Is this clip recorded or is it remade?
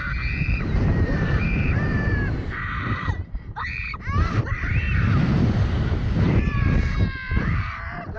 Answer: remade